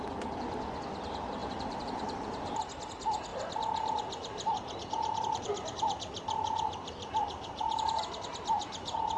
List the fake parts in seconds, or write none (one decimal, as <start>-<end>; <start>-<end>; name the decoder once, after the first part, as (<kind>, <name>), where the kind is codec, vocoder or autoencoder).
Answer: 1.4-2.6 (vocoder, BigVGAN v2); 3.3-8.0